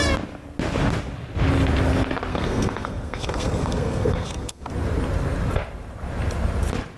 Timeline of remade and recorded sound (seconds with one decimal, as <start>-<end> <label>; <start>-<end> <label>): 0.0-2.3 recorded; 2.3-4.7 remade; 4.7-7.0 recorded